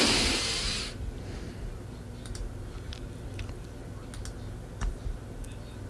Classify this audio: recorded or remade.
recorded